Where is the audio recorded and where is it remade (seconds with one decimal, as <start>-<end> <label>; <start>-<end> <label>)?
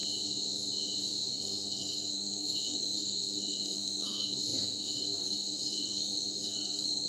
0.0-1.3 recorded; 1.3-7.1 remade